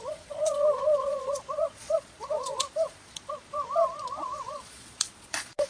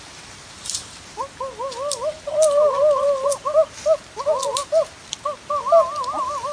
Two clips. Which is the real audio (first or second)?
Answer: second